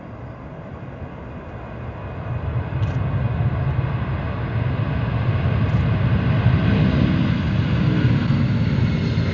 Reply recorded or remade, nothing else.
recorded